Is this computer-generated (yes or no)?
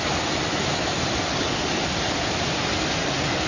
no